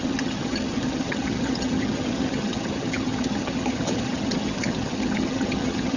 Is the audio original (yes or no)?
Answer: no